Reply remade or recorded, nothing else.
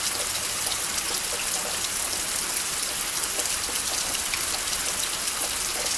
recorded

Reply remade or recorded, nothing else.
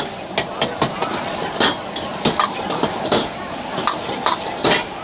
recorded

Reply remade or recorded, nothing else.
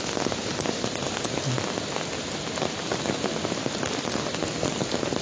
recorded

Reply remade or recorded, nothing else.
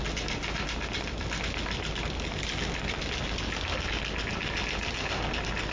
recorded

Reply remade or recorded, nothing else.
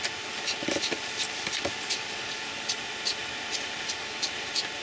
recorded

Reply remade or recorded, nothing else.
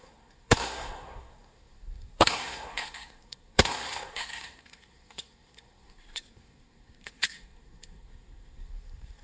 remade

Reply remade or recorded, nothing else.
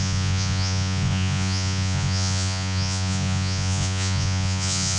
remade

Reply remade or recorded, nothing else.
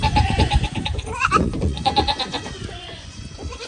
remade